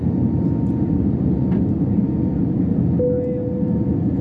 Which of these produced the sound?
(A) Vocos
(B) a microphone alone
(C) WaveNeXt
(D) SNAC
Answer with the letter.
B